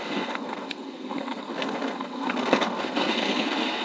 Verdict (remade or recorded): remade